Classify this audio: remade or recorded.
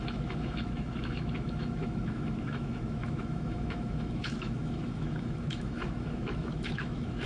remade